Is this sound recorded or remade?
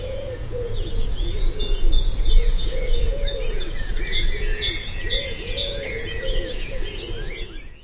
remade